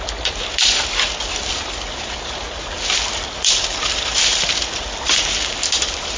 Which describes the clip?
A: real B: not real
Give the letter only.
A